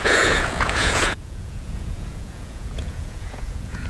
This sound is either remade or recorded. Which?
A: remade